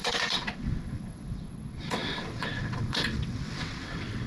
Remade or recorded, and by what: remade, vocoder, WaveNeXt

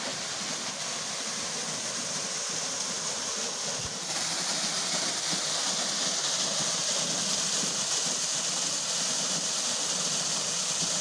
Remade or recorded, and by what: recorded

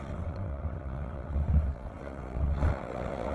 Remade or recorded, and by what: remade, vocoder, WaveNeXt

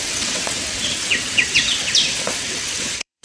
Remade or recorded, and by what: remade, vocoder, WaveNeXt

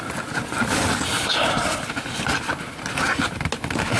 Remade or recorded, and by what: recorded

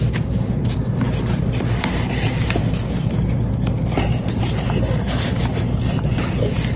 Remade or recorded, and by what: recorded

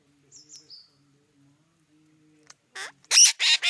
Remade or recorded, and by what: recorded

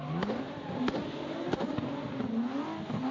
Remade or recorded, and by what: recorded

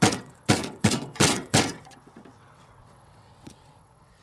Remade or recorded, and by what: remade, vocoder, WaveNeXt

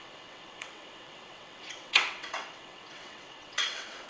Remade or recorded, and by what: remade, vocoder, WaveNeXt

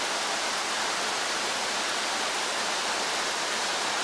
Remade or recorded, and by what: recorded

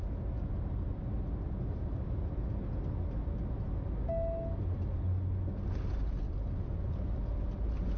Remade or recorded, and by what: recorded